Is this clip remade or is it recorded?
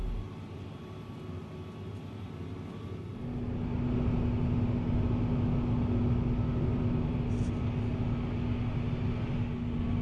recorded